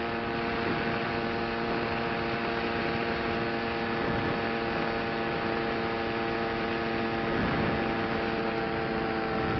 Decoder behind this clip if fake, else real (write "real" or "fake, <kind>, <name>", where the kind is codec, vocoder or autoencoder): real